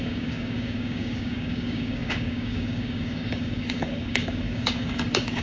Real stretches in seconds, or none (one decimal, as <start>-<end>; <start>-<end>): none